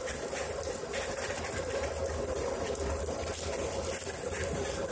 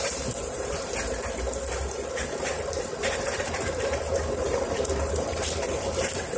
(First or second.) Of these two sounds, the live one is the first